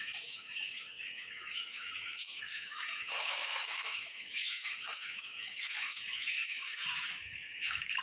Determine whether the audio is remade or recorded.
remade